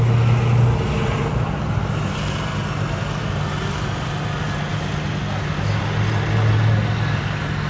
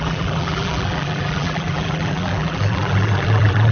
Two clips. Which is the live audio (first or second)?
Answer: first